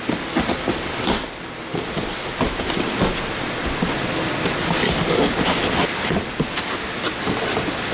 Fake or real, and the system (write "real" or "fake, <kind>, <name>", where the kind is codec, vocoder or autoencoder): real